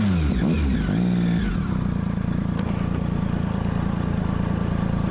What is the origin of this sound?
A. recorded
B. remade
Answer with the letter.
A